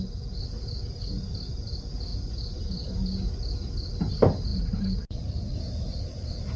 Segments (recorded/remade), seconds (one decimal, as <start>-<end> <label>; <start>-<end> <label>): 0.0-6.6 recorded